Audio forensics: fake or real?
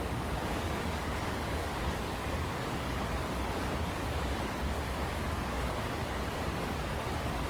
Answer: fake